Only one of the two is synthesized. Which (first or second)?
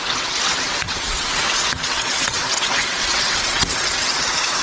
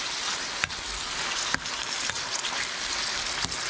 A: first